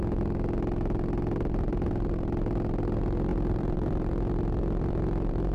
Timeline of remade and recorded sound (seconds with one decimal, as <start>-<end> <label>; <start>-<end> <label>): 0.0-3.3 recorded; 3.3-4.1 remade; 4.1-5.5 recorded